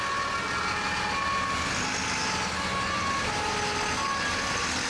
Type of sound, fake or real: real